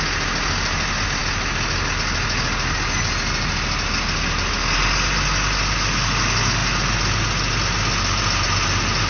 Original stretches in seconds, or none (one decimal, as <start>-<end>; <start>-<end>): 0.0-9.1